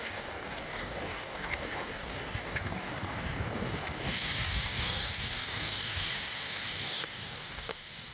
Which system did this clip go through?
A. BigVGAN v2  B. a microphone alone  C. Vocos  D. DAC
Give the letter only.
D